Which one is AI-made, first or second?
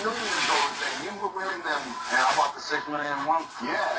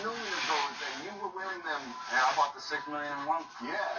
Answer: first